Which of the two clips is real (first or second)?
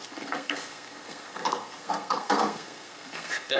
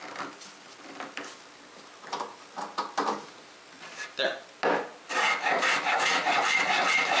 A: second